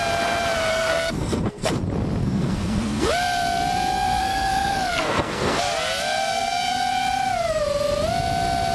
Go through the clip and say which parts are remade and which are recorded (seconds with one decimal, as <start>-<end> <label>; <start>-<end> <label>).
0.0-0.7 recorded; 0.7-1.8 remade; 1.8-2.2 recorded; 2.2-3.1 remade; 3.1-3.9 recorded; 3.9-5.6 remade; 5.6-8.7 recorded